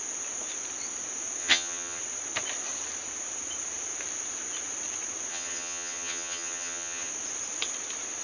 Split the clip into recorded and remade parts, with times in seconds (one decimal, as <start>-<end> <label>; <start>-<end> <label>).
0.0-1.4 recorded; 1.4-2.0 remade; 2.0-5.3 recorded; 5.3-7.1 remade; 7.1-8.2 recorded